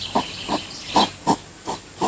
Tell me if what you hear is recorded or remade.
recorded